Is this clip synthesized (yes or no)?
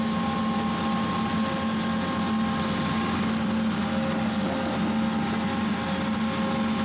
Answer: no